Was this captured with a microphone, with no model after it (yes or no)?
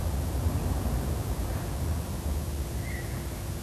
yes